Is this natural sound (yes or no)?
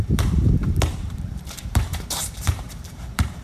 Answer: no